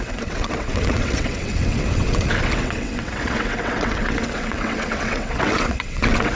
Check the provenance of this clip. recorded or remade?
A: remade